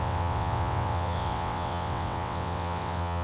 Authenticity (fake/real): fake